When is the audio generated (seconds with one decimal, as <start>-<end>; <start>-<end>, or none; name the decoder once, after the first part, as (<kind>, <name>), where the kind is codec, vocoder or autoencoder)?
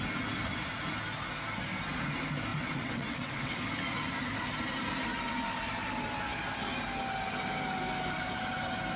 2.5-3.6 (vocoder, WaveNeXt)